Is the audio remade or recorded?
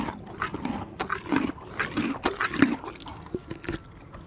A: recorded